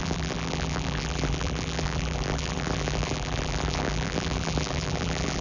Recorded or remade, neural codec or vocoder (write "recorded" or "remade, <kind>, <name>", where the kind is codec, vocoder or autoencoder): remade, vocoder, BigVGAN v2